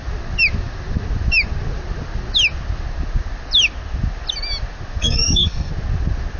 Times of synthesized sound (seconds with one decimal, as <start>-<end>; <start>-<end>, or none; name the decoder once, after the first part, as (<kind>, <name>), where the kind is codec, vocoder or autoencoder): 5.0-5.7 (codec, SNAC)